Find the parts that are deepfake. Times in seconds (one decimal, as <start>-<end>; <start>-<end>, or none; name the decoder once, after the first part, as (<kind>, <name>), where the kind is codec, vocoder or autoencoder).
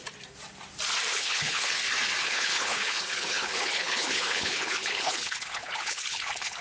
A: 1.1-1.8 (codec, HILCodec); 2.2-6.6